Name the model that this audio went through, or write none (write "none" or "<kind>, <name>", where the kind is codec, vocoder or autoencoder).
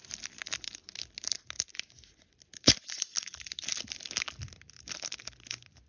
none